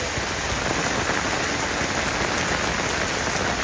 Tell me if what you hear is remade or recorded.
recorded